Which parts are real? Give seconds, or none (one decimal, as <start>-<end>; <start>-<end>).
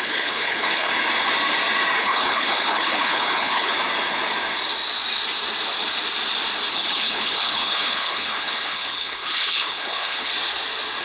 0.9-2.0; 3.7-6.7; 10.3-11.0